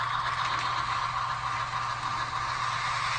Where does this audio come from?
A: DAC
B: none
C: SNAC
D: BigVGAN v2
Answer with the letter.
B